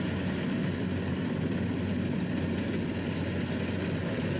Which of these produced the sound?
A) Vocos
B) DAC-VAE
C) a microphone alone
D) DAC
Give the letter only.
C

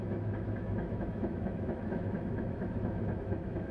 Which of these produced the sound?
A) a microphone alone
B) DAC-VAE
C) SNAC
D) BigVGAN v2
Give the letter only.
B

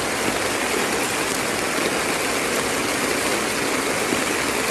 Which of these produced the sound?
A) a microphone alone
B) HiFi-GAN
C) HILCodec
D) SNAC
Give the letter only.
A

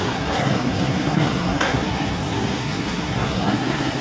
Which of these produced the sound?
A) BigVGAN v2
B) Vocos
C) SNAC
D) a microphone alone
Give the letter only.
C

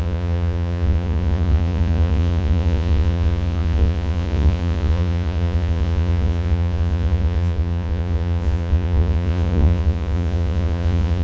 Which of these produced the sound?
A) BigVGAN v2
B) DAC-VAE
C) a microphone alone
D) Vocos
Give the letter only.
D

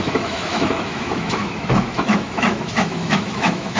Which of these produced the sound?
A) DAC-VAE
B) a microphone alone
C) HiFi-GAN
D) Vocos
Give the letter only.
A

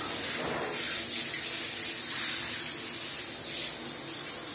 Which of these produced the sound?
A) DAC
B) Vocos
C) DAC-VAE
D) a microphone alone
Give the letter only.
D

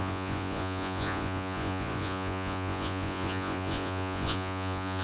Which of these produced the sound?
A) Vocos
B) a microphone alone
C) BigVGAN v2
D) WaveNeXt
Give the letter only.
A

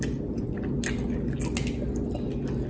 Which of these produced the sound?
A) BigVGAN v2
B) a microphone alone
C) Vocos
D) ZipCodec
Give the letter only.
B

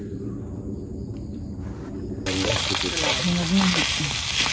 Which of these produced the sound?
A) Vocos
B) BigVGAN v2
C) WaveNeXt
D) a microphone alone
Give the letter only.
D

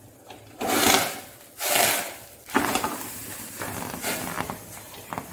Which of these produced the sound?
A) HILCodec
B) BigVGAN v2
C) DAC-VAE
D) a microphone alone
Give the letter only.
D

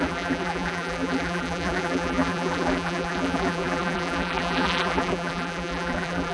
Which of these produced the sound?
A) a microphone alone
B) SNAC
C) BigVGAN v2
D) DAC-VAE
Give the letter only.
C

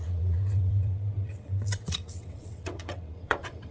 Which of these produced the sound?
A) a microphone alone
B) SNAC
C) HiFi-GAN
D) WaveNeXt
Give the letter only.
D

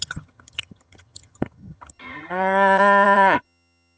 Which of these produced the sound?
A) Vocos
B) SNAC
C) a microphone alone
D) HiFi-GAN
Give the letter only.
D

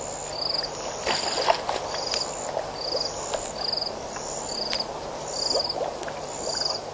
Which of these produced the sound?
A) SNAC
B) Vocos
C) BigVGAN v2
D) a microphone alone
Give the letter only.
D